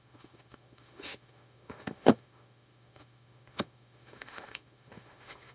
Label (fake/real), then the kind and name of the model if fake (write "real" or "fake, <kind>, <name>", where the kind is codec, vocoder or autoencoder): fake, autoencoder, DAC-VAE